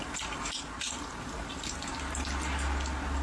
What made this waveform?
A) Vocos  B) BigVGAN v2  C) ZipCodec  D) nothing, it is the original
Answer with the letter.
D